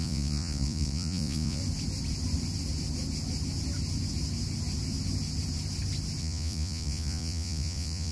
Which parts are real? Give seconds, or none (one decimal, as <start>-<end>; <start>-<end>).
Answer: 1.6-6.2